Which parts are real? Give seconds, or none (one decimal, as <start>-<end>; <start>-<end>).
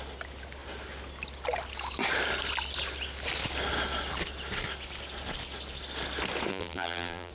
0.0-6.5